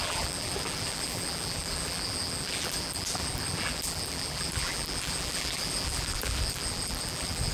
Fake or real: fake